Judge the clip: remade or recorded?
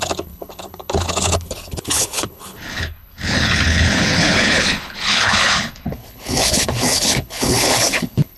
remade